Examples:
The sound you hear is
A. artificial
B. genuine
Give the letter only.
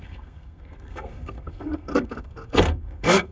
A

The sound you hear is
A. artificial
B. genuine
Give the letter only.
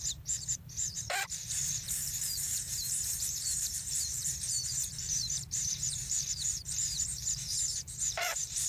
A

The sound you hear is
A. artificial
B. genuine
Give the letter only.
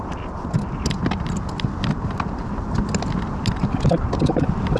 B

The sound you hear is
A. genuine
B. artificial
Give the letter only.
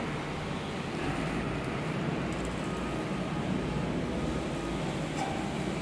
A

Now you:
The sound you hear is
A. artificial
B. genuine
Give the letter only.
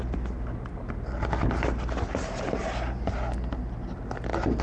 B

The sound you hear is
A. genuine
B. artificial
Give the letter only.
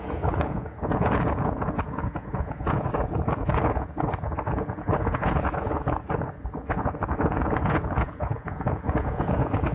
B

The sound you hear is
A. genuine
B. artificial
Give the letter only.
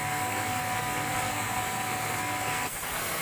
B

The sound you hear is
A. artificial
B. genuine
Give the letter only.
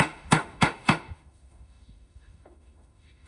A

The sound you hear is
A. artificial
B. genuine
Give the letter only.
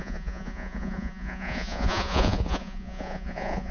A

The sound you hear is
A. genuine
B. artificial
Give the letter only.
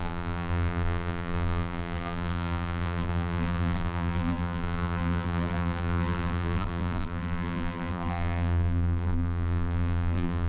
B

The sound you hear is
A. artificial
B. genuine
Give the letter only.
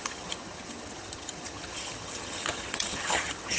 A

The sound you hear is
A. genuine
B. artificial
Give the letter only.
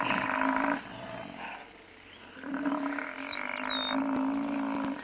A